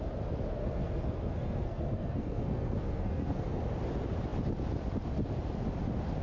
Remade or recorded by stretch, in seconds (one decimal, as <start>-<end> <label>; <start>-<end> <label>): 0.0-0.6 recorded; 0.6-3.6 remade; 3.6-6.2 recorded